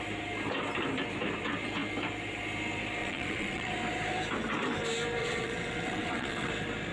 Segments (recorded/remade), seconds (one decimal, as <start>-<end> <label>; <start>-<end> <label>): 0.0-3.0 recorded; 3.0-3.7 remade; 3.7-5.2 recorded; 5.2-6.5 remade; 6.5-6.9 recorded